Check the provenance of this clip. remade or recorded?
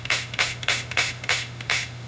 remade